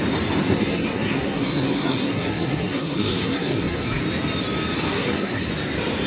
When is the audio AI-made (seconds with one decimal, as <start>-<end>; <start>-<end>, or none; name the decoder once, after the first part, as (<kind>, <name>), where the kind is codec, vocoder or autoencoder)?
0.4-4.0 (codec, SNAC); 4.9-5.5